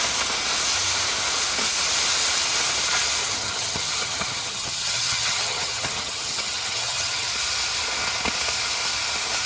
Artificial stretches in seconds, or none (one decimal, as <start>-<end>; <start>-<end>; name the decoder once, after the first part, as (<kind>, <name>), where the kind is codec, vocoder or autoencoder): 3.2-7.3 (vocoder, HiFi-GAN)